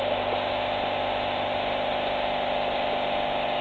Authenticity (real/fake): real